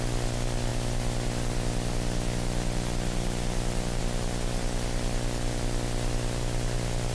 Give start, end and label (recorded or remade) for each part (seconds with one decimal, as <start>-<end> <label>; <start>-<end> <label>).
0.0-7.1 recorded